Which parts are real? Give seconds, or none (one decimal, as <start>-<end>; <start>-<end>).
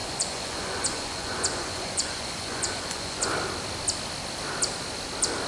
3.3-5.5